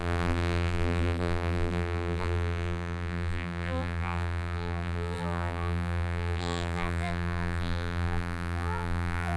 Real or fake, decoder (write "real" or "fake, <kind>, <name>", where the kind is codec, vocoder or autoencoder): fake, vocoder, BigVGAN v2